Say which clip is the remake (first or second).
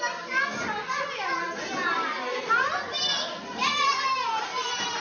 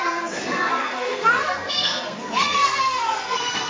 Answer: second